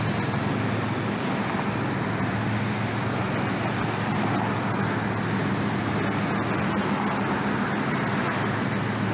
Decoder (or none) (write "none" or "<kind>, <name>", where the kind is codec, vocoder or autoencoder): none